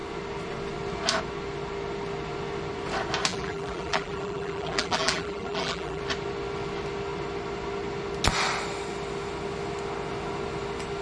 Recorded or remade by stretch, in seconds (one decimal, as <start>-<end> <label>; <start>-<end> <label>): 0.0-3.3 recorded; 3.3-6.0 remade; 6.0-11.0 recorded